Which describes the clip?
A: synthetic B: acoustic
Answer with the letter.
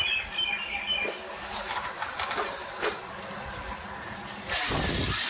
B